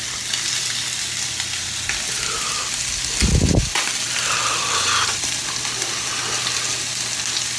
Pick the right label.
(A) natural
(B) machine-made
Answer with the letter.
A